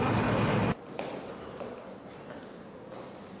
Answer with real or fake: real